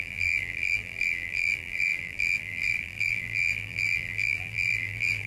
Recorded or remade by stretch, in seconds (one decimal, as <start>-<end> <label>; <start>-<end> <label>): 0.0-5.3 remade